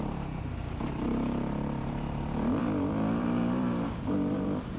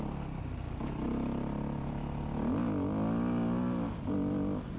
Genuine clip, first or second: second